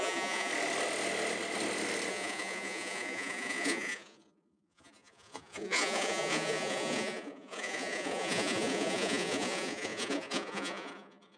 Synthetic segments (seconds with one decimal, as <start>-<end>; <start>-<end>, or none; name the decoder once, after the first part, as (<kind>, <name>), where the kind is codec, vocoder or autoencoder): 0.0-0.5 (vocoder, Vocos); 2.1-11.4